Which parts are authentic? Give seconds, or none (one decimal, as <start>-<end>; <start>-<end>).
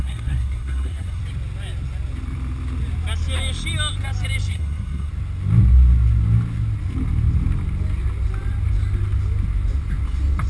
1.2-4.5; 5.1-10.5